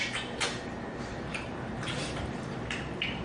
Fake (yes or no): yes